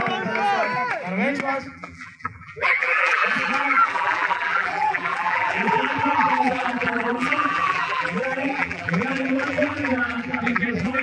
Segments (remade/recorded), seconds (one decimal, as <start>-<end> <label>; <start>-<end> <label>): 0.0-1.6 recorded; 1.6-11.0 remade